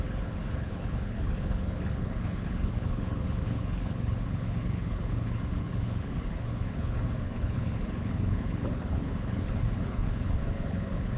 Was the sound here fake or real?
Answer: fake